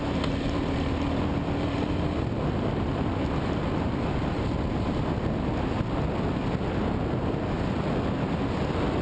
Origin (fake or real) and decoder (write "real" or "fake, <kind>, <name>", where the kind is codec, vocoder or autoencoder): real